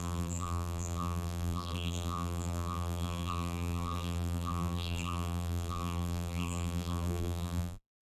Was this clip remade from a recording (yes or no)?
yes